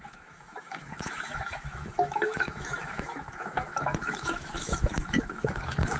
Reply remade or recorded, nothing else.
remade